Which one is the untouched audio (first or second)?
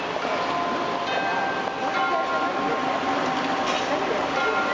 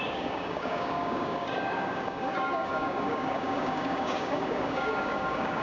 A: first